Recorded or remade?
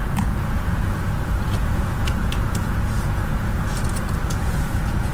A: remade